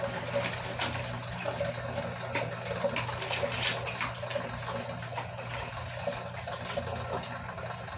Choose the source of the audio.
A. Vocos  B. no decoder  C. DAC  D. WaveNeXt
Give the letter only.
B